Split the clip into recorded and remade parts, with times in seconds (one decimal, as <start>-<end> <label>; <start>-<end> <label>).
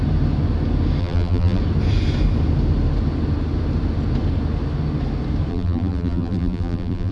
0.0-1.0 recorded; 1.0-1.6 remade; 1.6-5.5 recorded; 5.5-7.1 remade